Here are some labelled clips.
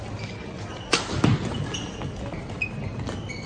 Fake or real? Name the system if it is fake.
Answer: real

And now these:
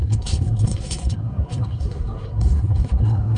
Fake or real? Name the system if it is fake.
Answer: fake, codec, SNAC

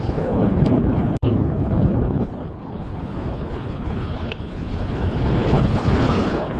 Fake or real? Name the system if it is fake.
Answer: fake, codec, HILCodec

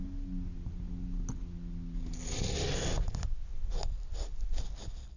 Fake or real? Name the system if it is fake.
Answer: real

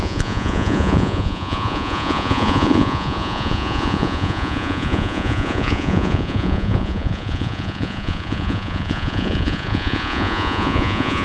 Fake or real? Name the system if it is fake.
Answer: fake, vocoder, Vocos